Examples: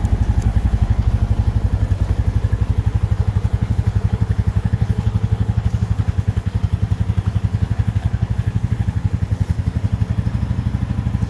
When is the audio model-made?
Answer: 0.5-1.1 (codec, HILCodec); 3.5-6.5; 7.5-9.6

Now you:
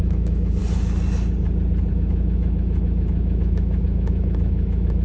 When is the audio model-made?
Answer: 0.0-0.6 (autoencoder, DAC-VAE); 1.9-5.0

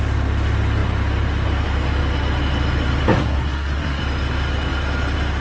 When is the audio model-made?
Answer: 3.2-4.0 (codec, SNAC)

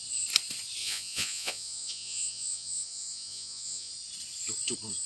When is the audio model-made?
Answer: 0.8-3.9 (vocoder, Vocos)

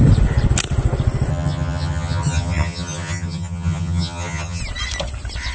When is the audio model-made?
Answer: 1.3-4.6 (vocoder, HiFi-GAN)

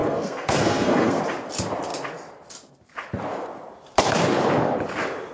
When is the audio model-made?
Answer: 0.0-1.2 (codec, SNAC)

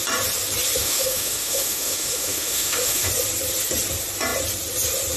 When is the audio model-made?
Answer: 0.8-3.1 (autoencoder, DAC-VAE)

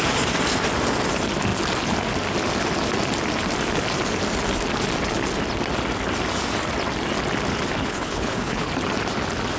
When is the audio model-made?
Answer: 7.8-8.7 (codec, HILCodec)